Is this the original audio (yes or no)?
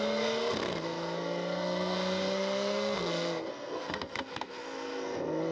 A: no